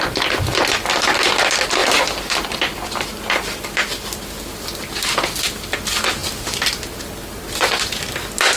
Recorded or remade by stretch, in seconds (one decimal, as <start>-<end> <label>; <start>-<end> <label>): 0.0-8.6 recorded